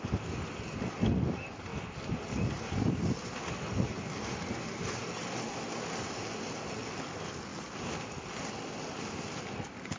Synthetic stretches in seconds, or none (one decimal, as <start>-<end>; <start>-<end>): none